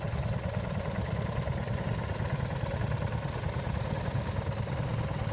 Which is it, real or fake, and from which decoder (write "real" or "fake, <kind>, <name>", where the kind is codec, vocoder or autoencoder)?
real